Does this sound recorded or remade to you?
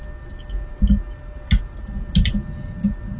recorded